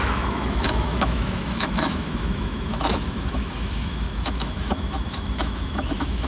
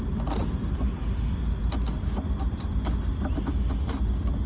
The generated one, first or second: first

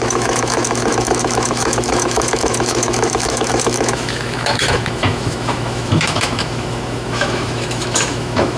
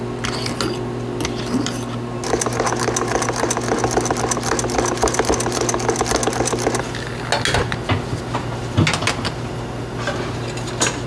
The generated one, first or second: first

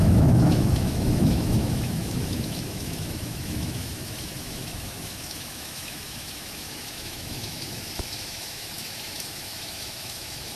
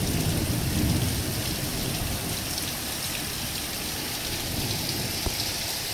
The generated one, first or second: first